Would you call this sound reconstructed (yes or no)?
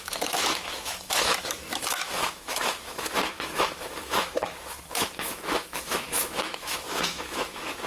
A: yes